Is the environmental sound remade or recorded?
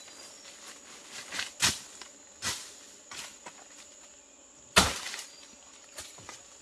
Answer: recorded